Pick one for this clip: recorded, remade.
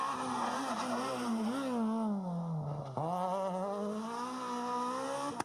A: recorded